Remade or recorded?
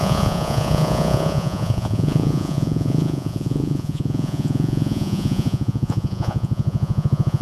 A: remade